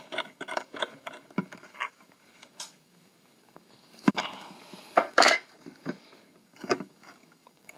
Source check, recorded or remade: remade